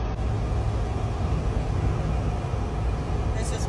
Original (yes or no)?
yes